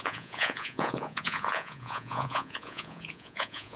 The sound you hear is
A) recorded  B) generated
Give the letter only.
B